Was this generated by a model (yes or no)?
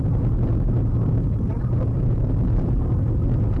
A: no